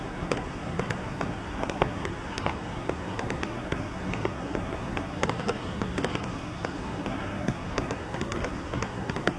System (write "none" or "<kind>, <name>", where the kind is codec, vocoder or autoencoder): codec, SNAC